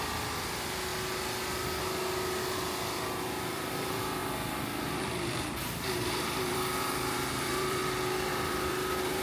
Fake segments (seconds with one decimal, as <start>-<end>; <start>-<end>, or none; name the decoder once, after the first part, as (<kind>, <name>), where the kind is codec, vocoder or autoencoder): 0.0-0.9 (vocoder, BigVGAN v2); 3.4-7.8; 8.3-9.2